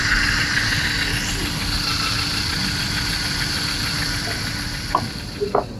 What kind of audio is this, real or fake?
real